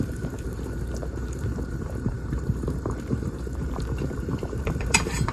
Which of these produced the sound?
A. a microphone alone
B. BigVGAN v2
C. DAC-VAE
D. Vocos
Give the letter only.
B